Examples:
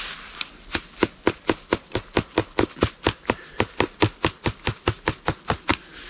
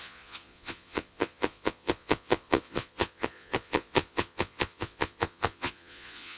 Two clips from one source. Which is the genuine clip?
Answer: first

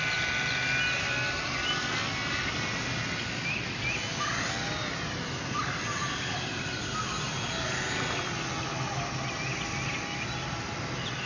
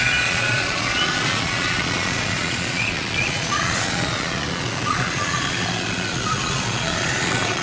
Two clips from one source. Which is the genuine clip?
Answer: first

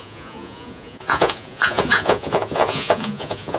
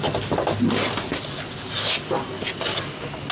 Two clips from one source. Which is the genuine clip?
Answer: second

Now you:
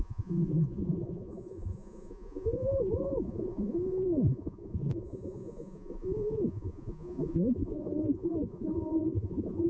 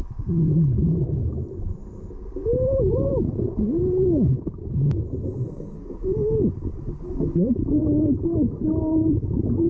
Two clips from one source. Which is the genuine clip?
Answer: second